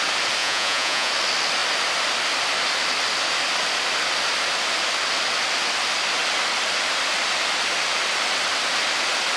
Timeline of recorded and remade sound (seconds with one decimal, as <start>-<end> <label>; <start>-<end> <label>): 0.0-0.4 recorded; 0.4-1.1 remade; 1.1-9.4 recorded